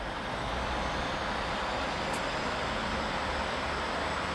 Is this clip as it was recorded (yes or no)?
yes